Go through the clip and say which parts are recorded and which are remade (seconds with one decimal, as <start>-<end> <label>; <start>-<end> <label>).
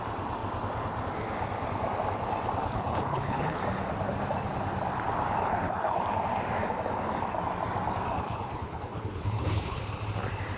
0.0-2.6 recorded; 2.6-3.6 remade; 3.6-5.4 recorded; 5.4-6.0 remade; 6.0-8.2 recorded; 8.2-9.8 remade; 9.8-10.6 recorded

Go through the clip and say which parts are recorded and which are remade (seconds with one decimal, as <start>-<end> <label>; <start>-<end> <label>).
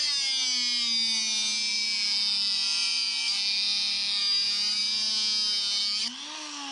0.0-1.7 recorded; 1.7-4.2 remade; 4.2-6.7 recorded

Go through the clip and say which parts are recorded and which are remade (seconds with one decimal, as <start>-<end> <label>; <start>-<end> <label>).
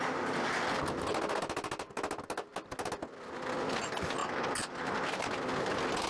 0.0-6.1 recorded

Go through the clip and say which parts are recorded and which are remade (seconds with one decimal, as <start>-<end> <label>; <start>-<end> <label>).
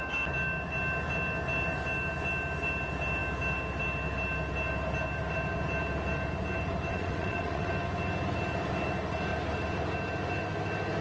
0.0-6.9 recorded; 6.9-7.7 remade; 7.7-11.0 recorded